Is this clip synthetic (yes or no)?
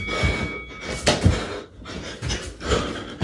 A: no